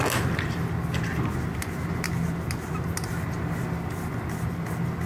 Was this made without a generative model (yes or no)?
yes